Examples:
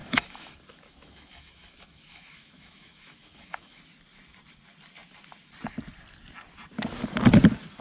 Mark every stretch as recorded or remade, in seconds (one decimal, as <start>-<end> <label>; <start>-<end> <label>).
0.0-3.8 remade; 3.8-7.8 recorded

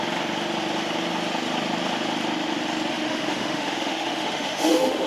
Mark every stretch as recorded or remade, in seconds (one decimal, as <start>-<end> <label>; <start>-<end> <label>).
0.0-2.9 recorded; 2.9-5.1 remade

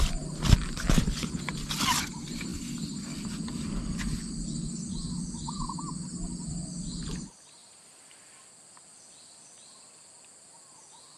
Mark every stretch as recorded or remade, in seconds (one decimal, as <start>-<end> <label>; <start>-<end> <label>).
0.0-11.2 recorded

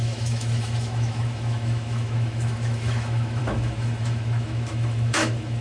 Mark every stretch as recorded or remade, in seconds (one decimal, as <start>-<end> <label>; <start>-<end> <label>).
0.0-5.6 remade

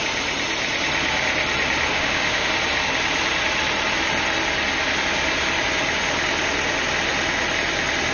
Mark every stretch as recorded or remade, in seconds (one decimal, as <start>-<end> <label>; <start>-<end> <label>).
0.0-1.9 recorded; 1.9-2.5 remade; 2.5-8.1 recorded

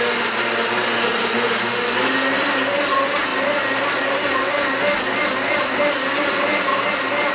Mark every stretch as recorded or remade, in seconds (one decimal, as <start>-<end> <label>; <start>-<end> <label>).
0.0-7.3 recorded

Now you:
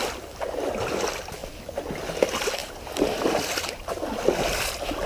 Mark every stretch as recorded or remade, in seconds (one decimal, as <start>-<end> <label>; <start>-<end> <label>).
0.0-5.1 recorded

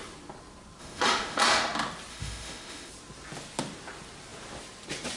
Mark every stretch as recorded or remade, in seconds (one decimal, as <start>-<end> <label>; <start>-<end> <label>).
0.0-0.8 recorded; 0.8-1.4 remade; 1.4-2.1 recorded; 2.1-2.9 remade; 2.9-5.2 recorded